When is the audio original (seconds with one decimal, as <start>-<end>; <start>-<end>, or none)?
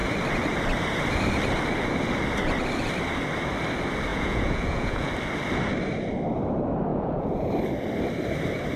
0.0-4.1; 5.1-6.9; 7.5-8.8